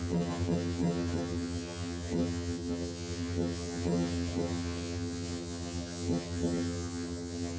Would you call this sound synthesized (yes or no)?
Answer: yes